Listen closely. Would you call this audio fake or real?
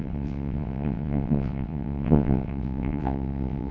fake